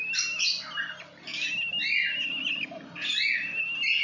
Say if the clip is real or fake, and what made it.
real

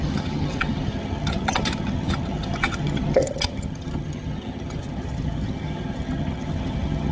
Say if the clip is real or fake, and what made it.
fake, vocoder, HiFi-GAN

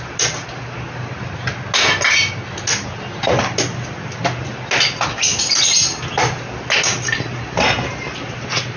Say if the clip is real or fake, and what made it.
real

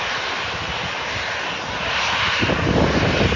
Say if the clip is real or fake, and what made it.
real